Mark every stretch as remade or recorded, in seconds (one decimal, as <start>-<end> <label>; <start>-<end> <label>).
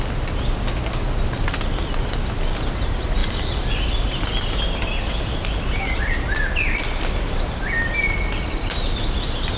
0.0-9.6 recorded